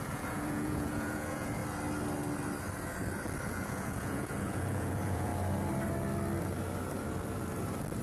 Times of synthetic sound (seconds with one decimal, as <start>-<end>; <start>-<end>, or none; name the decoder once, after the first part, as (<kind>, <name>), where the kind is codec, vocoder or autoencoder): 0.0-1.6 (vocoder, Vocos); 3.5-5.3